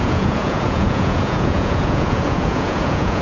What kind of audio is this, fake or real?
fake